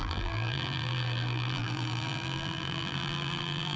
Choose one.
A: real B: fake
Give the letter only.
B